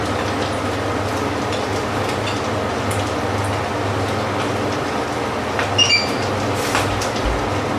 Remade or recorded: recorded